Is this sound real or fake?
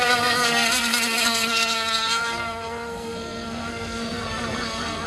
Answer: fake